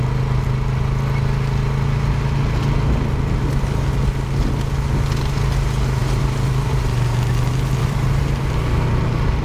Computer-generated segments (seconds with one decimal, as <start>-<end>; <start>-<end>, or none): 6.0-6.8; 7.8-9.0